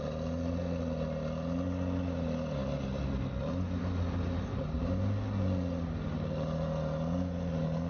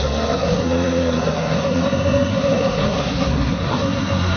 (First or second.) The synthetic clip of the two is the second